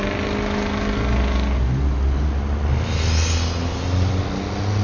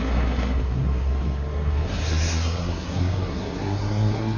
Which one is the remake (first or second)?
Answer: second